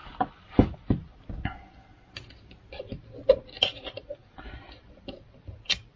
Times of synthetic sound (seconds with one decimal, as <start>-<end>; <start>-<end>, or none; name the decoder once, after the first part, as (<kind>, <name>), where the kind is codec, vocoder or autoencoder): none